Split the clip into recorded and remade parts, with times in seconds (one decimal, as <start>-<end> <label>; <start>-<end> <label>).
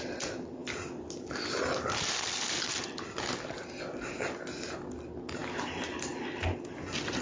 0.0-7.2 recorded